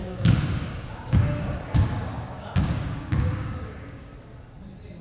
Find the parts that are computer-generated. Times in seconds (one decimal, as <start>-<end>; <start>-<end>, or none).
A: 0.0-4.1